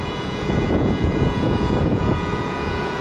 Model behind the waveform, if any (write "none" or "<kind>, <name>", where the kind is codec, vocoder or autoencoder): vocoder, Vocos